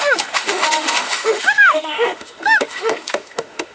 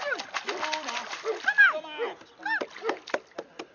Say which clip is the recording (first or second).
second